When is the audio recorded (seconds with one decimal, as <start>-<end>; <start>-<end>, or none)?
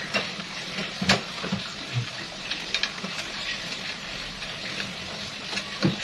4.6-6.0